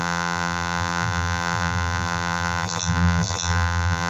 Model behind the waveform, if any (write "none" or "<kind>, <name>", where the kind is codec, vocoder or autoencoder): vocoder, BigVGAN v2